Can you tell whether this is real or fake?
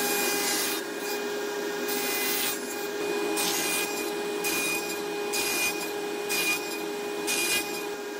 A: real